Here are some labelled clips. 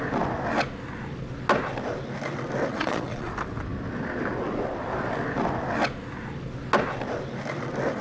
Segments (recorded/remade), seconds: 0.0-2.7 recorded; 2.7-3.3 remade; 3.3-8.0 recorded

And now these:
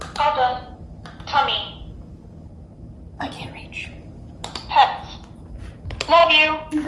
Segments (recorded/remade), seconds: 0.0-6.9 recorded